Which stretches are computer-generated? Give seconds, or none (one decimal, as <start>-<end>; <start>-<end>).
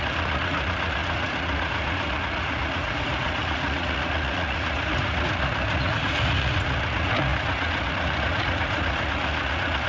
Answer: 0.0-9.9